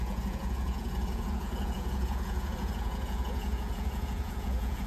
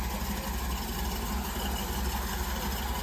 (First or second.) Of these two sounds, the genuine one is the second